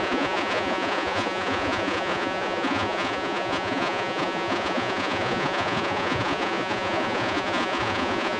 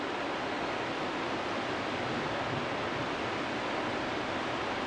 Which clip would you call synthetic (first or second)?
first